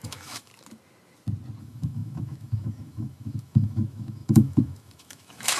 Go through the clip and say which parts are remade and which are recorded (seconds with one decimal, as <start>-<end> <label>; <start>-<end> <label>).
0.0-0.5 remade; 0.5-1.6 recorded; 1.6-5.6 remade